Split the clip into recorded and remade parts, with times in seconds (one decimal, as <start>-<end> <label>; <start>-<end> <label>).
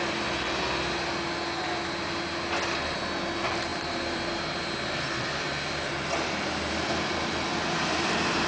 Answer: 0.0-3.7 recorded; 3.7-4.3 remade; 4.3-8.5 recorded